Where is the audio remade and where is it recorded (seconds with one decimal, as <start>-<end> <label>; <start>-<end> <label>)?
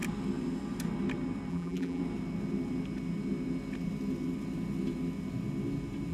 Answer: 0.0-1.5 recorded; 1.5-2.0 remade; 2.0-6.1 recorded